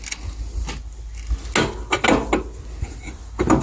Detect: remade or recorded recorded